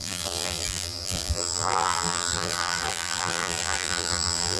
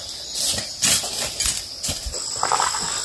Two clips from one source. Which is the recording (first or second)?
second